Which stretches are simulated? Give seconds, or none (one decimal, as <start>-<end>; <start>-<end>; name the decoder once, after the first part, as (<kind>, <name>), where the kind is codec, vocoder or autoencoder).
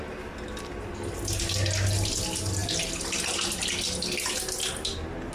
none